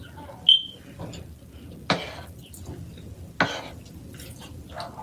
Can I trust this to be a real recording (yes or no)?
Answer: yes